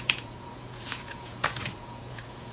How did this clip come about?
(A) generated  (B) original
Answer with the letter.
A